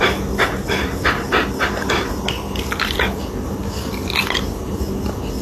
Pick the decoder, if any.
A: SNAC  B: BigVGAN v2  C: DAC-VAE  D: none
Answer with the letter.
D